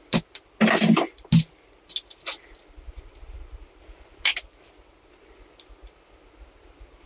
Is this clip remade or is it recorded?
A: recorded